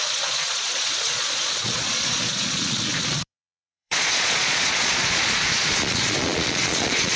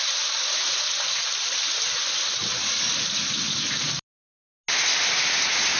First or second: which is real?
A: second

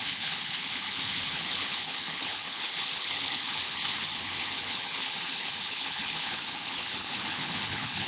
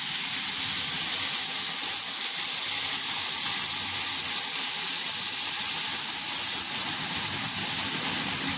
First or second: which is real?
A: second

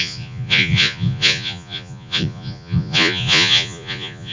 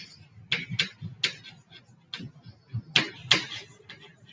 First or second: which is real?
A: second